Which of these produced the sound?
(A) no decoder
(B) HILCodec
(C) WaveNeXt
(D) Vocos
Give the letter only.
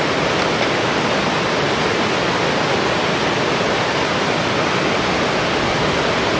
A